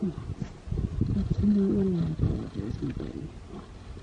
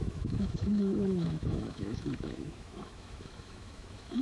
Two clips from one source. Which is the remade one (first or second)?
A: second